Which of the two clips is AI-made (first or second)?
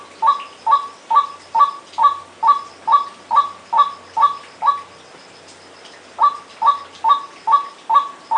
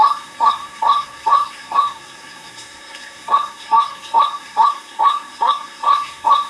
second